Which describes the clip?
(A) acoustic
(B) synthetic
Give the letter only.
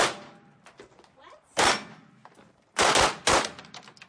A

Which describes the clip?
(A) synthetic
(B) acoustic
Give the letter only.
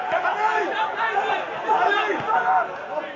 B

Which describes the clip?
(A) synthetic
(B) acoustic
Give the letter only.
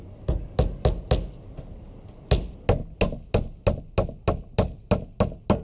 B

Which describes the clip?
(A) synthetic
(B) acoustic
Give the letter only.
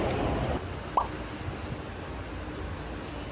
B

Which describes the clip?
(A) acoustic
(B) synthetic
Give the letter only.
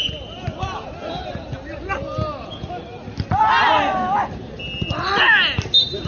A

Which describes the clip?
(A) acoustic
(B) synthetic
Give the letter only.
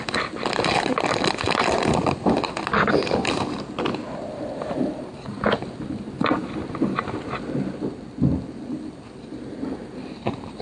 B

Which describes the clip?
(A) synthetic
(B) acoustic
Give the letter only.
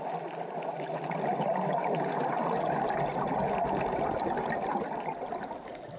B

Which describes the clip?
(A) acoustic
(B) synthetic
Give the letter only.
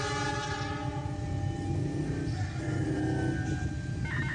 A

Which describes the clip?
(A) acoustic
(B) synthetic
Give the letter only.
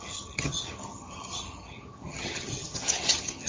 B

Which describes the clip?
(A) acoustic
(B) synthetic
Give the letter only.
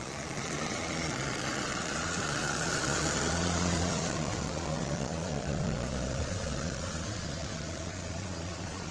B